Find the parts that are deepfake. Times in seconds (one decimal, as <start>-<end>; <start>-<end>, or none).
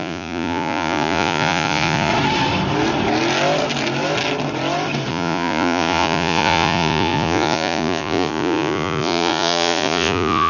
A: 0.0-2.1; 5.1-10.5